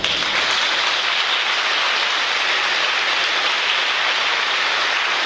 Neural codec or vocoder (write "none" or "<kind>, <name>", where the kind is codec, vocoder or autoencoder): none